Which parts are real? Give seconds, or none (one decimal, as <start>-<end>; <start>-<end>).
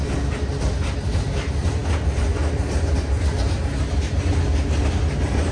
0.0-5.5